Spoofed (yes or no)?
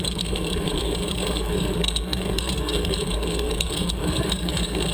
yes